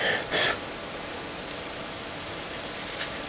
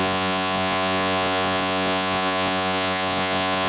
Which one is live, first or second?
first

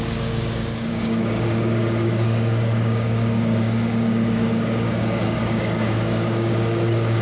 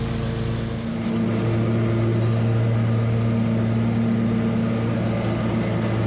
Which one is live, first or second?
second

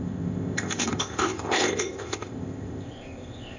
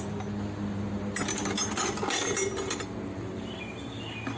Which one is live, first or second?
second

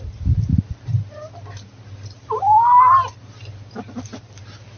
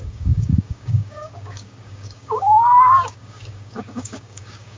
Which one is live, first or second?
first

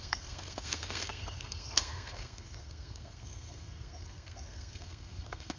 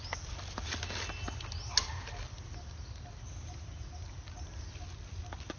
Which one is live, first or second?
second